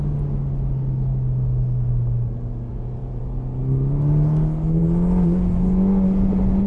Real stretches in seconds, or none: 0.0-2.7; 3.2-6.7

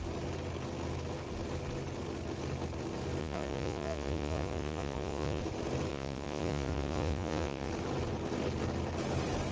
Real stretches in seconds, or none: 0.0-3.2; 5.4-5.9; 7.7-9.5

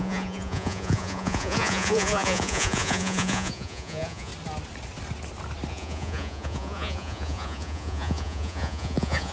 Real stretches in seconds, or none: 4.3-5.7